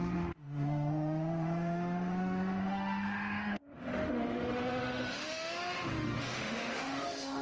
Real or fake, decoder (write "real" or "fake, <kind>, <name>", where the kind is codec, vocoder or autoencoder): fake, autoencoder, DAC-VAE